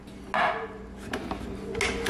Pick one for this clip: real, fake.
real